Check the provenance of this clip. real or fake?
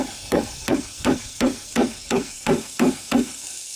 fake